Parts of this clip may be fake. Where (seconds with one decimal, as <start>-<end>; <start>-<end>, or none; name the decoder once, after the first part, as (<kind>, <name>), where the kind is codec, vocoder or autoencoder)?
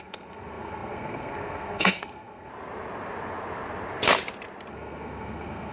0.0-2.5 (codec, SNAC); 4.7-5.7